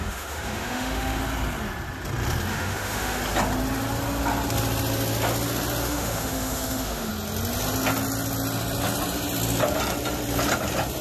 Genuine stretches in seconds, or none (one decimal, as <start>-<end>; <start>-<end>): 1.2-2.5; 3.2-5.8; 7.1-11.0